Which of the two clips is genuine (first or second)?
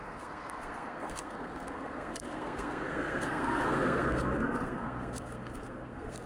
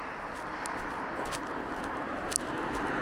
second